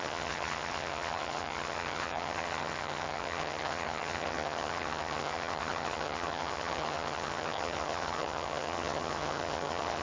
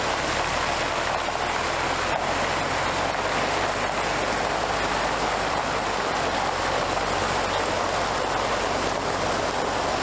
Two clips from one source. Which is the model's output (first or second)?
first